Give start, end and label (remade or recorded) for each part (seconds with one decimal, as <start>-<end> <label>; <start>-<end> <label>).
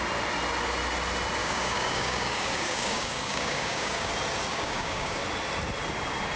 0.0-1.4 recorded; 1.4-4.1 remade; 4.1-4.5 recorded; 4.5-5.2 remade; 5.2-6.4 recorded